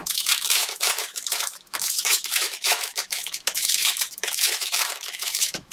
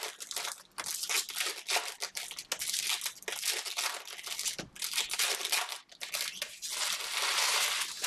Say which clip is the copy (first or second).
first